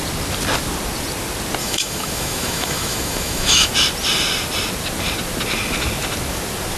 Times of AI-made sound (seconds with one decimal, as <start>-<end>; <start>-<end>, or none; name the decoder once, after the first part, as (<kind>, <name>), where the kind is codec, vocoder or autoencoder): 1.6-3.7 (autoencoder, DAC-VAE)